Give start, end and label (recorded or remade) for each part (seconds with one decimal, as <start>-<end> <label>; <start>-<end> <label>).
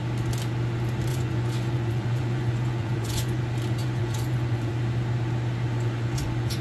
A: 0.0-1.1 recorded; 1.1-3.4 remade; 3.4-3.8 recorded; 3.8-4.7 remade; 4.7-5.7 recorded; 5.7-6.6 remade